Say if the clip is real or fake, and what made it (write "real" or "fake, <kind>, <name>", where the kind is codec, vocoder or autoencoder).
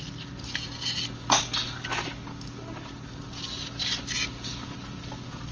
real